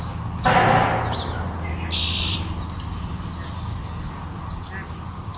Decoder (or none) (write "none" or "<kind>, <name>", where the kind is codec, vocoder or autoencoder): none